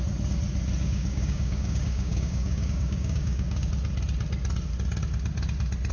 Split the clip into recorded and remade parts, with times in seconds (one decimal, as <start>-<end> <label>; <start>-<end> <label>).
0.0-0.8 recorded; 0.8-3.7 remade; 3.7-5.9 recorded

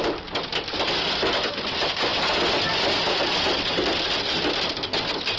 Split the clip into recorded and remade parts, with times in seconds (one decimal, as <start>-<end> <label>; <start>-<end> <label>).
0.0-5.4 recorded